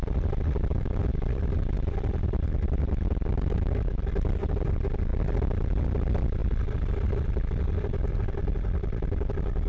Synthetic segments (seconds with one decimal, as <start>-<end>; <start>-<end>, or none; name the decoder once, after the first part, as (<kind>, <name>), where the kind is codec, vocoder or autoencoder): 0.0-9.7 (vocoder, BigVGAN v2)